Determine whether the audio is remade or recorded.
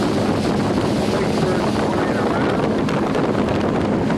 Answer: recorded